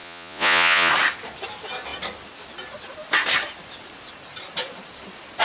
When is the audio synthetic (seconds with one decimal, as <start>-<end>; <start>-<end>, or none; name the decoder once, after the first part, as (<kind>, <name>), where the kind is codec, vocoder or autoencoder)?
0.0-0.9 (vocoder, Vocos)